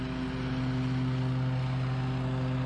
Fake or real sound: real